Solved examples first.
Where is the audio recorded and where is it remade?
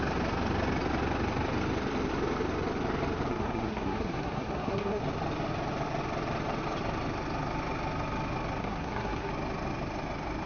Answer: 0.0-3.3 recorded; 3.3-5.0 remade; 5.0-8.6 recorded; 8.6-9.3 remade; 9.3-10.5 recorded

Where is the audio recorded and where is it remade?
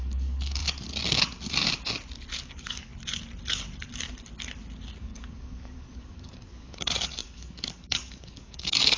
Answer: 0.0-0.6 remade; 0.6-2.4 recorded; 2.4-2.9 remade; 2.9-5.0 recorded; 5.0-9.0 remade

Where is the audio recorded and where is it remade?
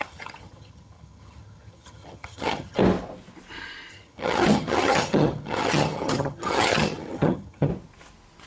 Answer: 0.0-2.8 remade; 2.8-3.9 recorded; 3.9-7.7 remade; 7.7-8.5 recorded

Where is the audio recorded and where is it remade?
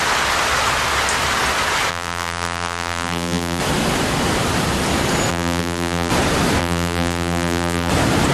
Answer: 0.0-1.9 recorded; 1.9-3.6 remade; 3.6-5.3 recorded; 5.3-6.1 remade; 6.1-6.6 recorded; 6.6-7.9 remade; 7.9-8.3 recorded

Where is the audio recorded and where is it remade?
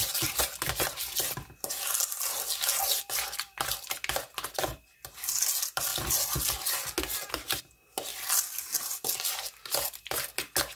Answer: 0.0-10.8 recorded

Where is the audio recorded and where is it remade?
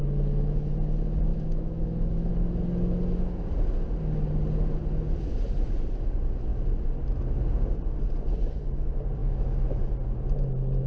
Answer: 0.0-1.3 recorded; 1.3-2.3 remade; 2.3-9.2 recorded; 9.2-9.8 remade; 9.8-10.9 recorded